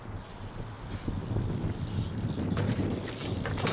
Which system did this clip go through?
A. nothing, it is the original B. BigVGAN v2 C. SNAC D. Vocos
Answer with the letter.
A